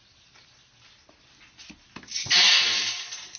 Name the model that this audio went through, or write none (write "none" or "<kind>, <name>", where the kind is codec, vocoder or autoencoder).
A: none